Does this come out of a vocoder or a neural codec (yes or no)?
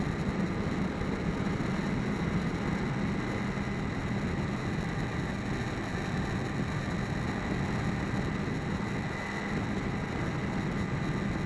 no